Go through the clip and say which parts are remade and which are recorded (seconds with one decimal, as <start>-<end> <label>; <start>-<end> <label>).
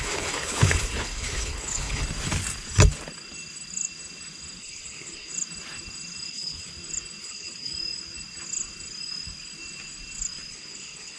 0.0-2.0 remade; 2.0-4.6 recorded; 4.6-5.3 remade; 5.3-6.3 recorded; 6.3-6.7 remade; 6.7-7.2 recorded; 7.2-7.7 remade; 7.7-10.5 recorded; 10.5-11.2 remade